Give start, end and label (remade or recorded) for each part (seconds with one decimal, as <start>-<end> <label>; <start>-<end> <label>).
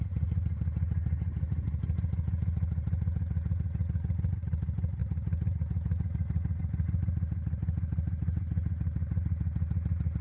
0.0-10.2 recorded